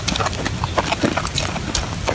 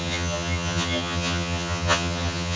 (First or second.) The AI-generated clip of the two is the second